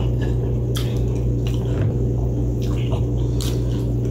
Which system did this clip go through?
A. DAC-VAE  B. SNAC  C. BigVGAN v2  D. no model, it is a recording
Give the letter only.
D